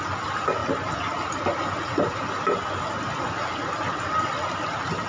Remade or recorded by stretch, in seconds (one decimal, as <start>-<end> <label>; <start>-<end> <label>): 0.0-5.1 recorded